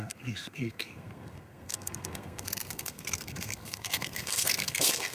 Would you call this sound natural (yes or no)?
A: no